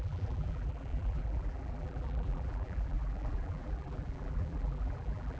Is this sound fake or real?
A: fake